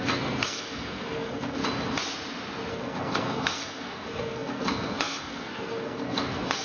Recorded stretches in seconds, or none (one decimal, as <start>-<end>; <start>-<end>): 1.6-2.7